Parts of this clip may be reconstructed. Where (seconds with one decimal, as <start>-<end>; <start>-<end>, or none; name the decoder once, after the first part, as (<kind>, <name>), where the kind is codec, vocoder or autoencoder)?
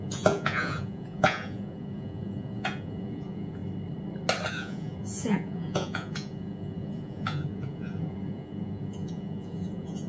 0.0-3.6 (vocoder, Vocos); 4.5-10.1